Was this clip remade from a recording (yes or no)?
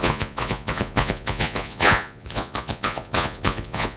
yes